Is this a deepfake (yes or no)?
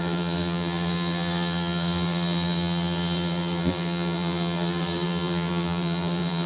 yes